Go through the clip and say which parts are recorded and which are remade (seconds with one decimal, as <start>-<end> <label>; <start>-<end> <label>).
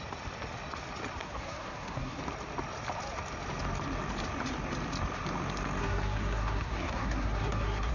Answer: 0.0-1.2 recorded; 1.2-2.2 remade; 2.2-5.8 recorded; 5.8-7.9 remade